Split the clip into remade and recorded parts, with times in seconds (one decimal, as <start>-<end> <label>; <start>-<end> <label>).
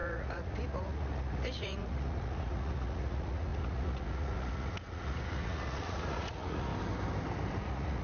0.0-6.7 remade; 6.7-7.6 recorded; 7.6-8.0 remade